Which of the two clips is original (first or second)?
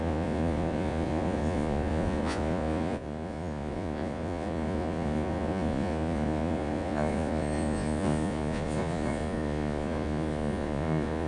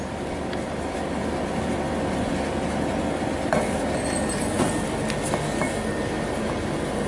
second